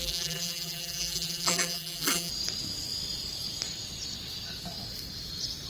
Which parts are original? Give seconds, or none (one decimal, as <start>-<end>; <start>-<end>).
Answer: 2.3-5.7